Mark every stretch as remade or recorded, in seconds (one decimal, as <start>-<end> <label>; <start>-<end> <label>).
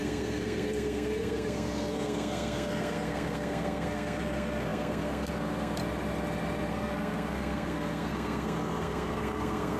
0.0-5.8 remade; 5.8-6.7 recorded; 6.7-9.8 remade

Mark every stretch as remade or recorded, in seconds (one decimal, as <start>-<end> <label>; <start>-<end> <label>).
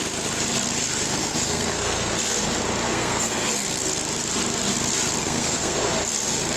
0.0-1.2 recorded; 1.2-2.1 remade; 2.1-2.9 recorded; 2.9-3.5 remade; 3.5-5.2 recorded; 5.2-5.9 remade; 5.9-6.6 recorded